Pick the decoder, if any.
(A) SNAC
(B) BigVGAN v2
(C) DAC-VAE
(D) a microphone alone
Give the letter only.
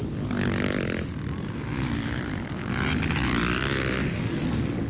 D